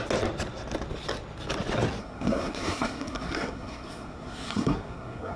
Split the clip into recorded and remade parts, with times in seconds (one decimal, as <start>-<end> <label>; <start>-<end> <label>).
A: 0.0-2.0 recorded; 2.0-5.4 remade